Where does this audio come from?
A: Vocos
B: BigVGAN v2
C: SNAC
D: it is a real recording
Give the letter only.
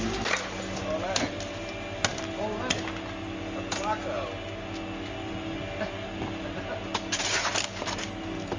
D